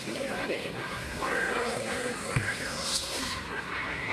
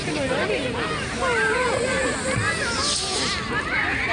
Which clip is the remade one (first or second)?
first